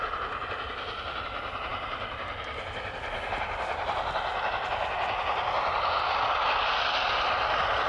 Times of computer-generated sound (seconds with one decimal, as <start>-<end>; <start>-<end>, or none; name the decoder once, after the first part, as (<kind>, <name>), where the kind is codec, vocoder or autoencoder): none